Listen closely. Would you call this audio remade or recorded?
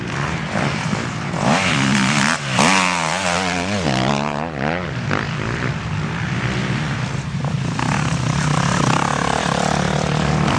recorded